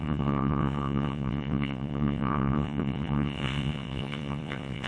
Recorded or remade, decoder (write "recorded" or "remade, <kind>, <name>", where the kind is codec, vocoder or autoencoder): remade, vocoder, WaveNeXt